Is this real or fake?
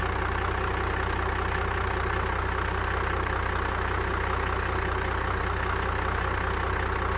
real